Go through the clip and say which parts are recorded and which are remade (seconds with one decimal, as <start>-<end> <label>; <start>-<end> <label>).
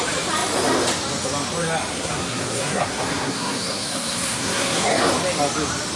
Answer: 0.0-1.9 recorded; 1.9-5.1 remade; 5.1-6.0 recorded